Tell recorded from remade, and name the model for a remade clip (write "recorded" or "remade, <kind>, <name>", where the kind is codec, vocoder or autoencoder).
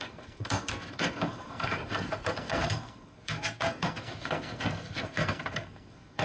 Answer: remade, codec, SNAC